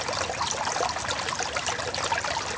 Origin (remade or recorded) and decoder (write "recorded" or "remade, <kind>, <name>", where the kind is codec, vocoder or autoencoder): recorded